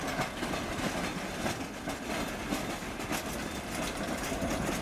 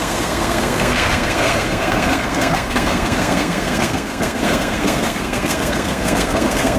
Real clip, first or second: first